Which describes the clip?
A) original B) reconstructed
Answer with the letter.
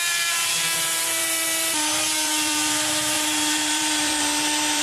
B